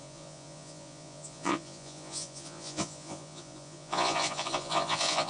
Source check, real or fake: fake